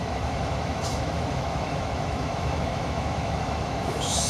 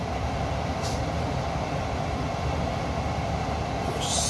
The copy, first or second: first